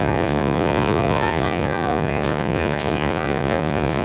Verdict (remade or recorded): remade